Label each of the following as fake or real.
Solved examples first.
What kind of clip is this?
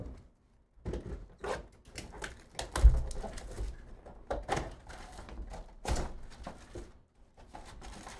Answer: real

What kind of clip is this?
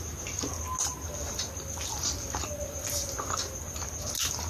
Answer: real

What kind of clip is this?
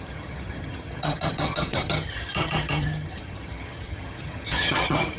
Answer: fake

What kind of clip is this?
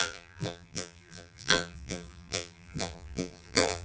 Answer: fake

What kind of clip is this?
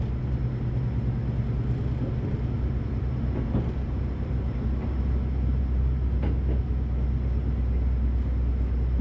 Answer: real